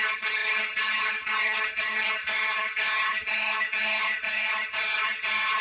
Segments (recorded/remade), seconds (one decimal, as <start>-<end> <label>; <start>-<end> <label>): 0.0-5.6 remade